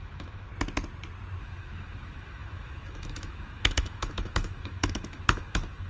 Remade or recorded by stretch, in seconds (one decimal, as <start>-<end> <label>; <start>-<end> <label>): 0.0-0.5 remade; 0.5-1.4 recorded; 1.4-5.9 remade